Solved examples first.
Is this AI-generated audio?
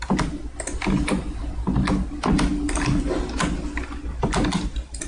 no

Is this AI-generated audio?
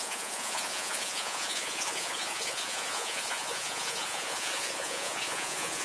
yes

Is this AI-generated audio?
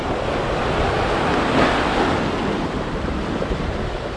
no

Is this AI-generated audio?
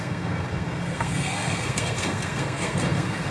yes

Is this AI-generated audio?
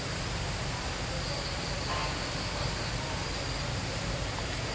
no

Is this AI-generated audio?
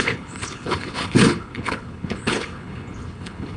yes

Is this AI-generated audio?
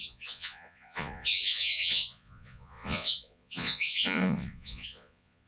yes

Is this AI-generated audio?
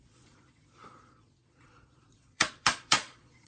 yes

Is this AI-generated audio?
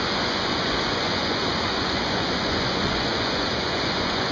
yes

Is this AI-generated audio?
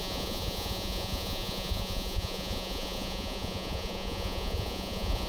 yes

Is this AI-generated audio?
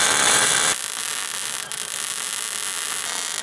no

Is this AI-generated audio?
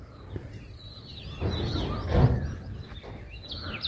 no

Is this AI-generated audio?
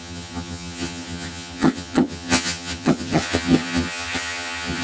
yes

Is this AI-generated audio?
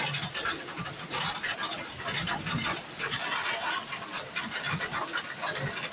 no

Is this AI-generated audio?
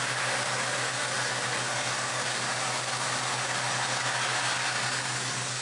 yes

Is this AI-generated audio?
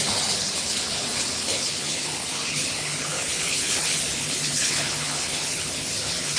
yes